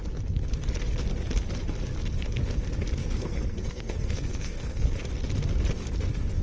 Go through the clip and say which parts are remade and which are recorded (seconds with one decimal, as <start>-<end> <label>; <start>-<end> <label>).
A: 0.0-3.0 recorded; 3.0-4.9 remade; 4.9-6.4 recorded